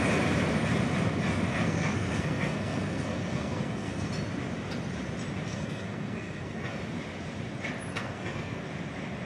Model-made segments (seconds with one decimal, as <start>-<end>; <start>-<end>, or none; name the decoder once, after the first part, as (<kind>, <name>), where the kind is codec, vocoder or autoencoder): 1.5-4.1 (codec, SNAC); 5.5-6.8; 7.9-8.6